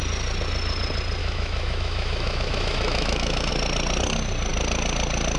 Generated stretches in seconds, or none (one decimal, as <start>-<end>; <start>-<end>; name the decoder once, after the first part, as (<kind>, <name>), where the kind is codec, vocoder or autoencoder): 1.2-3.5 (autoencoder, DAC-VAE)